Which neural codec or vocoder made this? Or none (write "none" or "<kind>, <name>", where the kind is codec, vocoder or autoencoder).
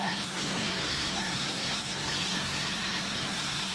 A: codec, SNAC